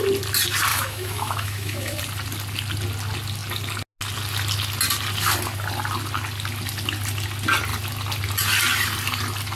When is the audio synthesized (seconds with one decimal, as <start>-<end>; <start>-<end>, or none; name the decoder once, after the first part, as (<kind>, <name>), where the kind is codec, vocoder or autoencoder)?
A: 0.7-2.0 (autoencoder, DAC-VAE)